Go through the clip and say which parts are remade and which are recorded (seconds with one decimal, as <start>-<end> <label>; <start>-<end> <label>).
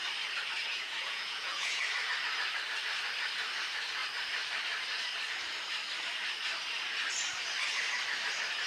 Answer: 0.0-0.7 recorded; 0.7-1.8 remade; 1.8-8.7 recorded